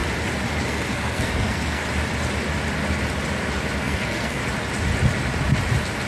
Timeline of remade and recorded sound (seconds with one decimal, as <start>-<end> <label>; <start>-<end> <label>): 0.0-0.6 recorded; 0.6-1.8 remade; 1.8-3.8 recorded; 3.8-4.4 remade; 4.4-6.1 recorded